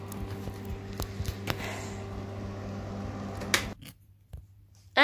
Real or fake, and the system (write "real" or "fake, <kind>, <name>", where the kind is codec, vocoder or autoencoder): real